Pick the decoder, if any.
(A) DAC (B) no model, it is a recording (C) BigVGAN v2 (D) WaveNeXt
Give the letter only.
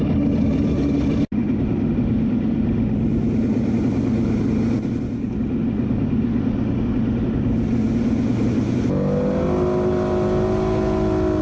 B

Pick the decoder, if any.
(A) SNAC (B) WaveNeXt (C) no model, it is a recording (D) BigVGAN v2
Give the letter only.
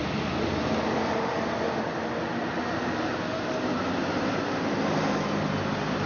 C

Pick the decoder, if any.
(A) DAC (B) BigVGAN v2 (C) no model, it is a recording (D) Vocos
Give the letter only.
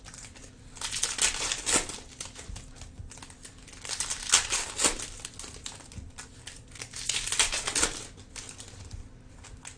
C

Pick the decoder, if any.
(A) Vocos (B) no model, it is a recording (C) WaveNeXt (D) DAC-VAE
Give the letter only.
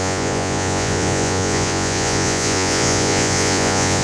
A